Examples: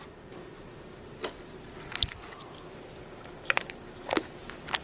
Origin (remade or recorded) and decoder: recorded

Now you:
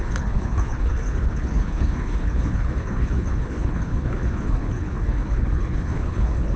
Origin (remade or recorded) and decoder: remade, codec, HILCodec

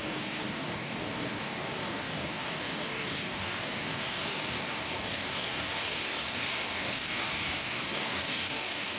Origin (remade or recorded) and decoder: remade, codec, DAC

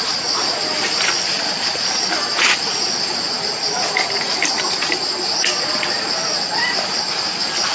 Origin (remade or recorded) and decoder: recorded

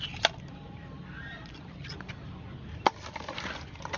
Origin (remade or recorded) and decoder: recorded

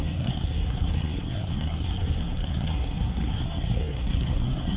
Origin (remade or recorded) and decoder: remade, codec, SNAC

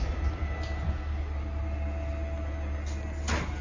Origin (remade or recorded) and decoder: recorded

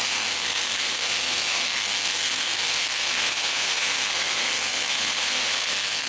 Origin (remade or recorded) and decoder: remade, codec, SNAC